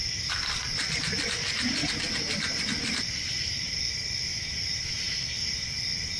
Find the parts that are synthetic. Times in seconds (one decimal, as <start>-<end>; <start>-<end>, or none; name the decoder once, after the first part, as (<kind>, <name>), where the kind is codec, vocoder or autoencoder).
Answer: 0.0-1.8 (vocoder, BigVGAN v2); 2.5-4.3; 5.6-6.2